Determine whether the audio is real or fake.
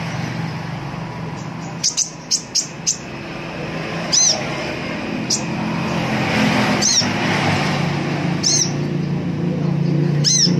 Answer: real